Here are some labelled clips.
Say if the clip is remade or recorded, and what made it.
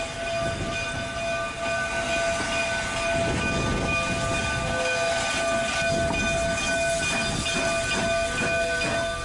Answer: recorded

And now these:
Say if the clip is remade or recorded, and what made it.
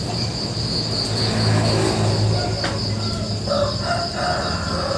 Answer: recorded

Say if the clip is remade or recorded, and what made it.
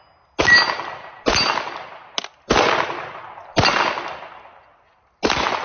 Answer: recorded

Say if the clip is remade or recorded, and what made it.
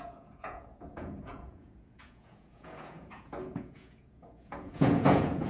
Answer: remade, vocoder, Vocos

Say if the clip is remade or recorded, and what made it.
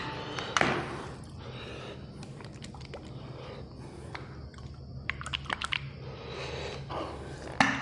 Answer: recorded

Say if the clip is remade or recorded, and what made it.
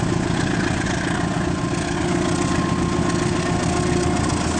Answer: recorded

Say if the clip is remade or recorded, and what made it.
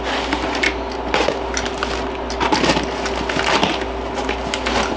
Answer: recorded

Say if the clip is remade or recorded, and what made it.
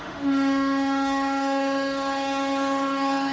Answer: remade, autoencoder, DAC-VAE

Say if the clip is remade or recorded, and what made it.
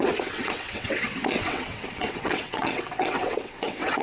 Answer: remade, vocoder, WaveNeXt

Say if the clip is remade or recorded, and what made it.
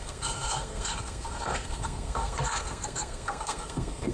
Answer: remade, codec, SNAC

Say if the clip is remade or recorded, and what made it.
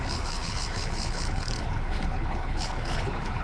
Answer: remade, codec, HILCodec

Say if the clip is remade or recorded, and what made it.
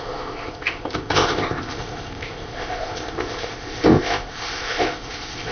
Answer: remade, codec, ZipCodec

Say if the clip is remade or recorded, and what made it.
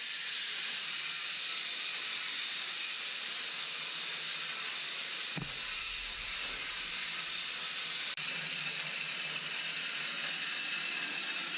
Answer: remade, vocoder, BigVGAN v2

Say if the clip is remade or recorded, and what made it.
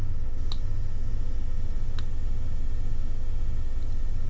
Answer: recorded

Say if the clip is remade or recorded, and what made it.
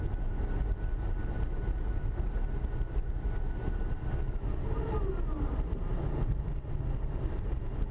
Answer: recorded